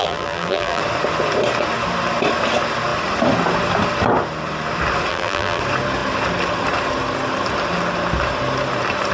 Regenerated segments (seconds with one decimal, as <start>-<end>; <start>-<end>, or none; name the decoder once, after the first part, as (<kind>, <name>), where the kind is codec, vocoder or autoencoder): 0.0-0.8 (vocoder, BigVGAN v2); 5.1-5.6